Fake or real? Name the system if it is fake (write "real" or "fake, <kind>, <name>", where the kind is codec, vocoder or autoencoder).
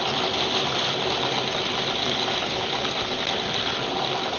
real